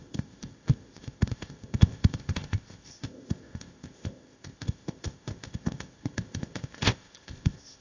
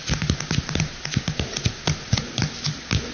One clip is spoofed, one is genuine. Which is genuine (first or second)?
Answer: second